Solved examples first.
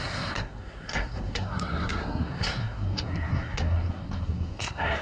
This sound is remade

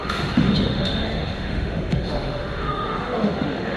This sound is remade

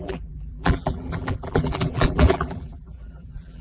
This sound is remade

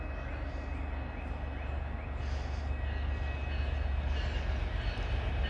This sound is recorded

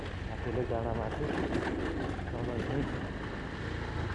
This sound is recorded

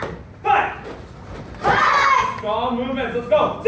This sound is recorded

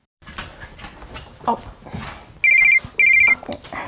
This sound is recorded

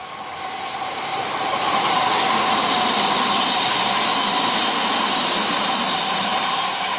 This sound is recorded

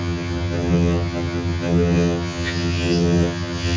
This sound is remade